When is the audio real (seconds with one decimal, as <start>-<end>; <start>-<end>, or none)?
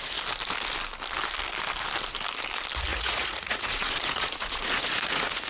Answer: 0.0-2.9